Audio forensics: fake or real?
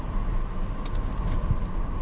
real